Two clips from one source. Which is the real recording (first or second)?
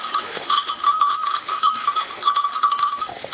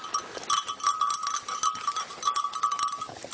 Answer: second